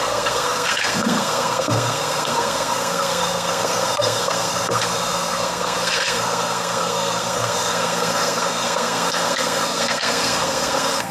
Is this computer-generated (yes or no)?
yes